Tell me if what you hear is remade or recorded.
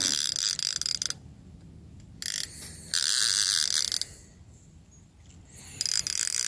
recorded